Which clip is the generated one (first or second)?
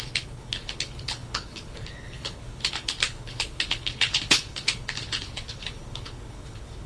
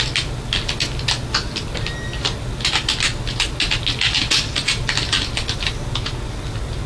first